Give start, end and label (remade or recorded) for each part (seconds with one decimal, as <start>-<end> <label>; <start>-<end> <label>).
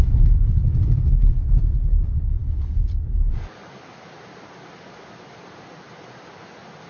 0.0-6.9 recorded